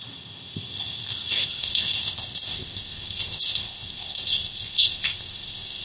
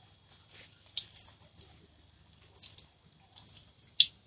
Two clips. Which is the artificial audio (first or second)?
first